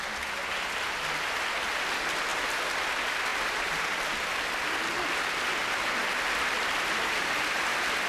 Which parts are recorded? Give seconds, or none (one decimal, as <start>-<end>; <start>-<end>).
0.0-2.3; 2.9-6.0